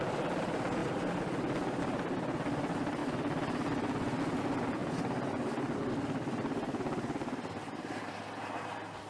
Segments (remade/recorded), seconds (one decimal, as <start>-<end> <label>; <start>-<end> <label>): 0.0-9.1 recorded

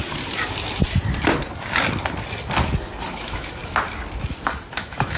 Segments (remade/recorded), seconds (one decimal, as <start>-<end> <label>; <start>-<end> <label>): 0.0-3.1 recorded; 3.1-3.6 remade; 3.6-4.7 recorded; 4.7-5.2 remade